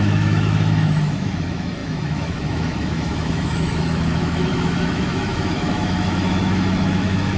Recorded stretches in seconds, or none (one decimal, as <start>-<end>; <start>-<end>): none